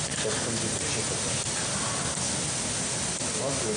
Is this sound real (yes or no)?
yes